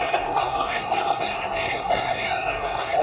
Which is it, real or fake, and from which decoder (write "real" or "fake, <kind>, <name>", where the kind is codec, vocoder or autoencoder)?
fake, codec, SNAC